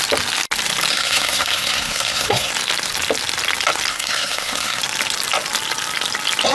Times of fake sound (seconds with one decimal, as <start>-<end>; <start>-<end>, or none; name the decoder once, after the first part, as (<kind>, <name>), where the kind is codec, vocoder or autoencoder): 0.9-2.5 (codec, SNAC); 3.9-4.8